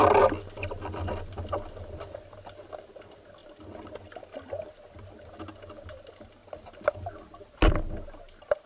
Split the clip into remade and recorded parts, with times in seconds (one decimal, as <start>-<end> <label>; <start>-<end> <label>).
0.0-8.7 recorded